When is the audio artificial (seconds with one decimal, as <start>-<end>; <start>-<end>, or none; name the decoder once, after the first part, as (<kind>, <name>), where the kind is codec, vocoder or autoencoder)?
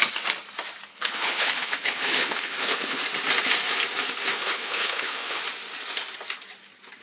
0.9-3.0 (codec, HILCodec); 4.3-5.4